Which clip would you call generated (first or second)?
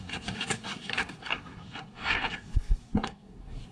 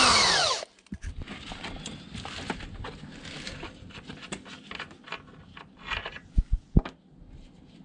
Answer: first